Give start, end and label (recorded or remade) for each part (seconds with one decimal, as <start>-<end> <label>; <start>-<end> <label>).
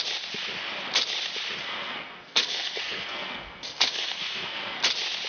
0.0-1.6 recorded; 1.6-4.8 remade; 4.8-5.3 recorded